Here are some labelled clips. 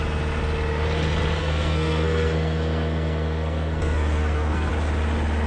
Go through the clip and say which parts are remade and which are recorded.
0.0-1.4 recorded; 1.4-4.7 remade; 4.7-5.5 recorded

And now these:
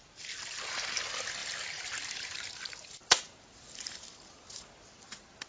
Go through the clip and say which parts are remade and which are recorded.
0.0-1.4 recorded; 1.4-4.7 remade; 4.7-5.5 recorded

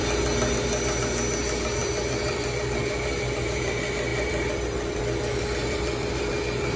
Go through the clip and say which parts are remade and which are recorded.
0.0-4.1 recorded; 4.1-5.0 remade; 5.0-5.6 recorded; 5.6-6.3 remade; 6.3-6.8 recorded

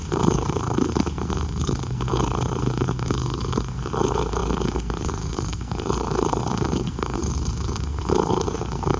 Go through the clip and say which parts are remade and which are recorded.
0.0-9.0 remade

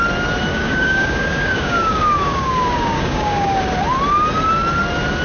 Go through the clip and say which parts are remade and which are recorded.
0.0-0.5 recorded; 0.5-3.6 remade; 3.6-5.2 recorded

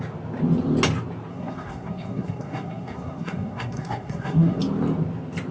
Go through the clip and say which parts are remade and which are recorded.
0.0-1.3 recorded; 1.3-4.6 remade; 4.6-5.5 recorded